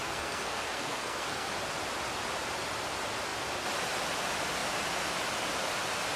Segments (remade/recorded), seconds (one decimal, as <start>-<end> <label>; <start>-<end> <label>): 0.0-1.5 remade; 1.5-6.2 recorded